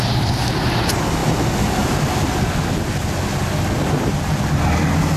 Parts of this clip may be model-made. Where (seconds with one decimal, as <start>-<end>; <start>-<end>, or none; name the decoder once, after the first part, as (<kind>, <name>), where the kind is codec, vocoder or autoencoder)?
none